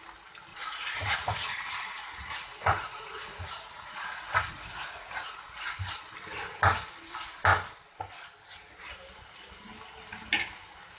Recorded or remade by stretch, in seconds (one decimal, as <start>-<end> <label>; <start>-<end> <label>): 0.0-0.5 recorded; 0.5-5.8 remade; 5.8-11.0 recorded